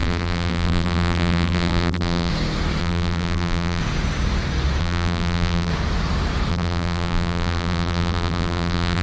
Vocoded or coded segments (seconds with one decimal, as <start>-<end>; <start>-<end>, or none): 0.0-2.3; 2.8-3.8; 4.8-5.7; 6.5-9.0